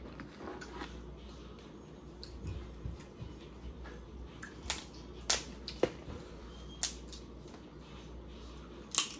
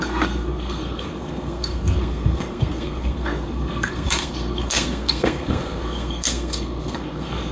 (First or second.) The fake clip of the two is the second